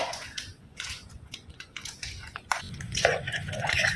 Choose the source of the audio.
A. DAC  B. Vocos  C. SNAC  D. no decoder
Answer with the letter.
B